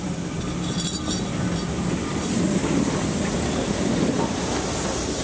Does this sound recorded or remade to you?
recorded